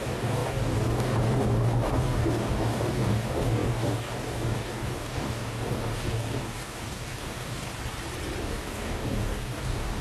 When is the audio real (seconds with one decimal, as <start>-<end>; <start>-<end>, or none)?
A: 7.7-8.4